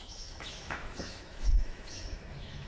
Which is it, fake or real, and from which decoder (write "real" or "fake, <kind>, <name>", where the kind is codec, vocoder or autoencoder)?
fake, autoencoder, DAC-VAE